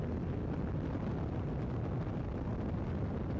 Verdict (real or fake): real